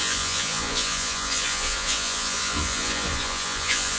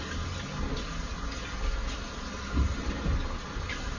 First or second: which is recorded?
second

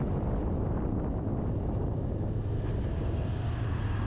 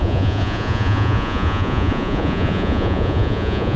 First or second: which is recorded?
first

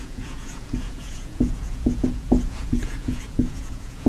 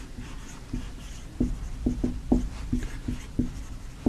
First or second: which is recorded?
second